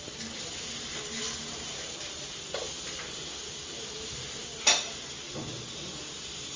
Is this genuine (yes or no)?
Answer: yes